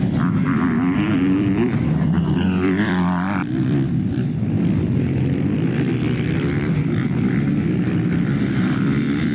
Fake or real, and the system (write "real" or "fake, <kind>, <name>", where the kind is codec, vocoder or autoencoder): fake, vocoder, BigVGAN v2